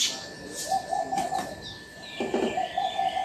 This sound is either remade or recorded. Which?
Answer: recorded